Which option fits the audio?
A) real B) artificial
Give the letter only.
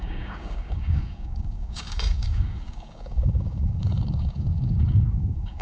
B